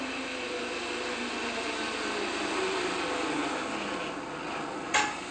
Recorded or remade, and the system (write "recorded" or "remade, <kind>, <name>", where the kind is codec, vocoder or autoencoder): recorded